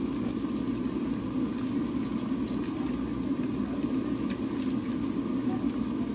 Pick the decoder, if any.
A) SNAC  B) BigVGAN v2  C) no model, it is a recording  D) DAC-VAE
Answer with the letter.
C